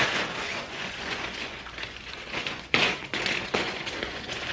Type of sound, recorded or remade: remade